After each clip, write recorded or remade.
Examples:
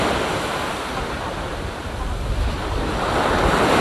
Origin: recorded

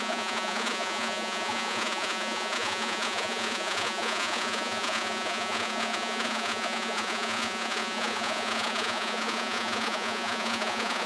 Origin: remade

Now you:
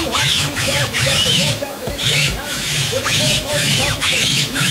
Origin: remade